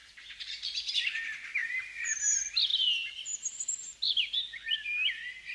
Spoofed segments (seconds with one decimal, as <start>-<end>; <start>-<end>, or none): 0.0-0.9; 2.7-4.3

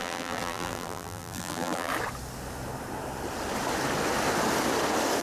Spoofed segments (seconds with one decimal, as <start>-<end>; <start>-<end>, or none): 0.0-1.9

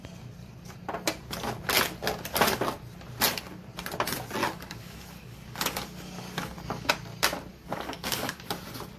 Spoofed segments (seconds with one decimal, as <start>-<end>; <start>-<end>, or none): 4.4-6.9; 7.5-8.5